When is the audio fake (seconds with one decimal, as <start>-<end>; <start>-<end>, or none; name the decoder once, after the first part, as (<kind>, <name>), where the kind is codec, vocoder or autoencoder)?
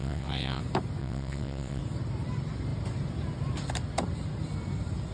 0.0-0.6 (vocoder, WaveNeXt); 1.0-1.8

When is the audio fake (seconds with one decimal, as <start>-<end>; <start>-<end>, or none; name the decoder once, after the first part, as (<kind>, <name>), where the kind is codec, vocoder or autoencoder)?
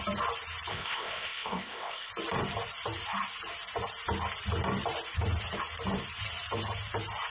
0.7-2.1 (codec, ZipCodec)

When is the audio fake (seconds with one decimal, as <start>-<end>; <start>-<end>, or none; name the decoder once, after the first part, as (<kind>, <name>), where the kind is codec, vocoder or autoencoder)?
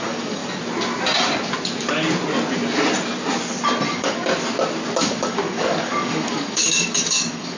0.0-0.4 (codec, DAC); 3.9-4.3; 5.0-7.6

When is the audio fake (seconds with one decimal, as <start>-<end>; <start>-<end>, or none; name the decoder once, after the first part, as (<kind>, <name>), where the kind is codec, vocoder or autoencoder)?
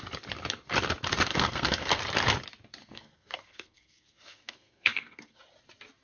1.3-2.0 (codec, SNAC); 2.8-5.4